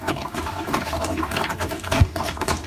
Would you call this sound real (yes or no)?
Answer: no